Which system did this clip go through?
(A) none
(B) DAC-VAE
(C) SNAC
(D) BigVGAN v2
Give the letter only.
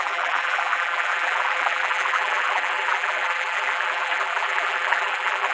D